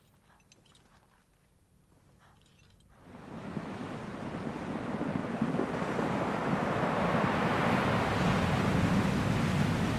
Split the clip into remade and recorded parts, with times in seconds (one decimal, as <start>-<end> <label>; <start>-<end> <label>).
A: 0.0-3.4 recorded; 3.4-4.0 remade; 4.0-10.0 recorded